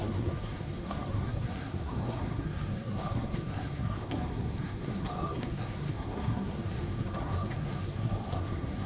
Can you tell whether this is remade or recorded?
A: remade